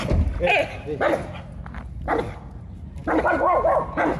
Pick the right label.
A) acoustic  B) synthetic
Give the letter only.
A